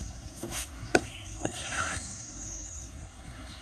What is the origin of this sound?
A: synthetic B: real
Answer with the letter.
A